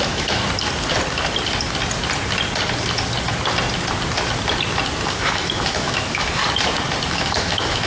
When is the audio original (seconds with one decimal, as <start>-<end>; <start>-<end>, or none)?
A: 0.4-5.1; 6.4-7.1